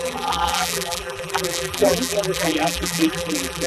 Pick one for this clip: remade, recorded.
remade